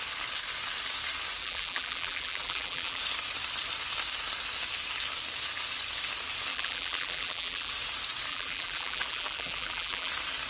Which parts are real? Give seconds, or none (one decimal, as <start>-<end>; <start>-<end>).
0.0-1.4; 3.0-6.5; 7.7-8.3; 10.1-10.5